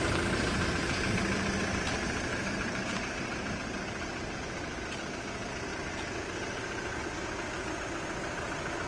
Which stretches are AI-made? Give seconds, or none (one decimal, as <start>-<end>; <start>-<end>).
2.3-4.4